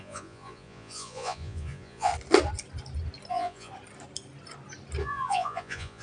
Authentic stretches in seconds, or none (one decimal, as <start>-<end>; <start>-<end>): 2.1-3.3; 3.7-5.0